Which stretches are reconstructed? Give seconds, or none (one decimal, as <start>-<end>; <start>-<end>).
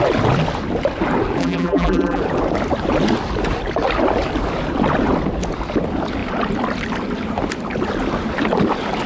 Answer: 1.4-2.2